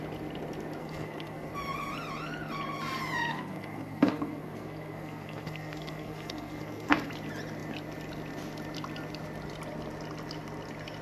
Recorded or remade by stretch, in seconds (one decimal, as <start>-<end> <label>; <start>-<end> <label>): 0.0-0.8 recorded; 0.8-1.5 remade; 1.5-3.3 recorded; 3.3-7.1 remade; 7.1-11.0 recorded